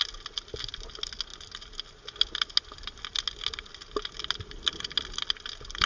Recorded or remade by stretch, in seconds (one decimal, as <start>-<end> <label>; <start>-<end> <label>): 0.0-5.9 recorded